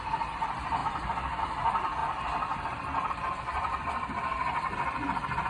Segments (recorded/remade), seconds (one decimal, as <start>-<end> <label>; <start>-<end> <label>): 0.0-2.0 remade; 2.0-3.1 recorded; 3.1-5.5 remade